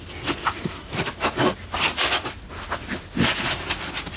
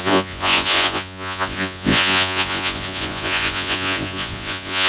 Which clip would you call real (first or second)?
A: first